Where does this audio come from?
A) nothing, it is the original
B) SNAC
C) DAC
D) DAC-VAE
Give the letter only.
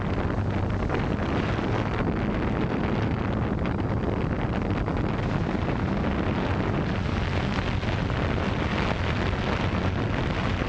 A